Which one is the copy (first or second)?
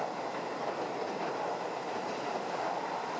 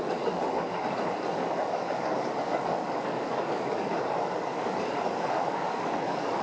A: second